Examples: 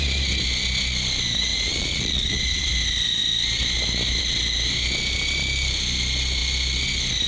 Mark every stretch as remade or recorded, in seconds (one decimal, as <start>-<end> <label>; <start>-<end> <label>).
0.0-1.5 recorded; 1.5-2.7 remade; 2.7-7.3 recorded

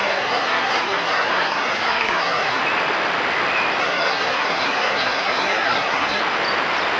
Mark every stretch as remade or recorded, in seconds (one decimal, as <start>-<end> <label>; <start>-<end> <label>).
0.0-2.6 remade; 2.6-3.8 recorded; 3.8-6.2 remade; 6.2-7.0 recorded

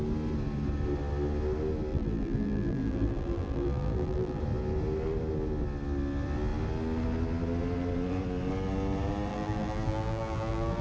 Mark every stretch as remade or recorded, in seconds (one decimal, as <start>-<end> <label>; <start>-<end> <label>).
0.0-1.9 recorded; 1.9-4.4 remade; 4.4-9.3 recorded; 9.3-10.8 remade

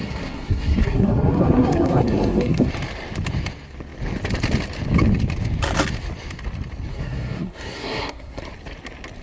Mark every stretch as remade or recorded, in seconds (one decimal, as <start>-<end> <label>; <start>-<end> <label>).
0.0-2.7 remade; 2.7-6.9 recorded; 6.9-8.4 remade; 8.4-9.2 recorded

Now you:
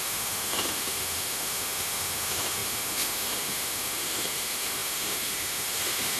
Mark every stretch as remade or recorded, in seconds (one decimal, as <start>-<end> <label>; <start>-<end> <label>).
0.0-6.2 remade

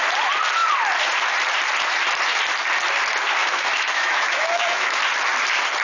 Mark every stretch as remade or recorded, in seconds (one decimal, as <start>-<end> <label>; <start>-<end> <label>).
0.0-3.4 recorded; 3.4-5.0 remade; 5.0-5.8 recorded

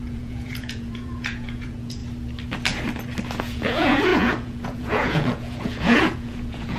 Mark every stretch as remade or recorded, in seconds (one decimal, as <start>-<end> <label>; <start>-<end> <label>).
0.0-2.0 remade; 2.0-3.4 recorded; 3.4-6.8 remade

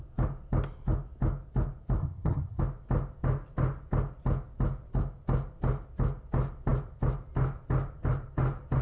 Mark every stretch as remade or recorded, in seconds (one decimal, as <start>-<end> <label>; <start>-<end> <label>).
0.0-2.0 recorded; 2.0-2.6 remade; 2.6-8.8 recorded